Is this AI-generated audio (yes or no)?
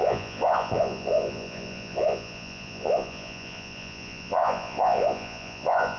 yes